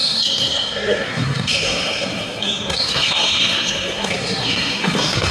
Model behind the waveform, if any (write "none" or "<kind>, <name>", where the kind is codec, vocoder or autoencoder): codec, SNAC